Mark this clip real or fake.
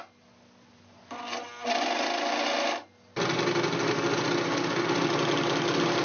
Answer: real